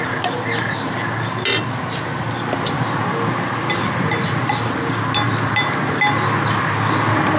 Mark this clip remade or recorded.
recorded